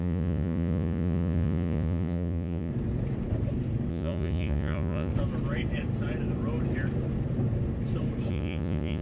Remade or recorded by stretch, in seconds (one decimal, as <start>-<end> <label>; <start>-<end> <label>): 0.0-2.7 remade; 2.7-3.9 recorded; 3.9-5.1 remade; 5.1-8.3 recorded; 8.3-9.0 remade